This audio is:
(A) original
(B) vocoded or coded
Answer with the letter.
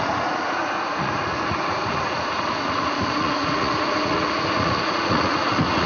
B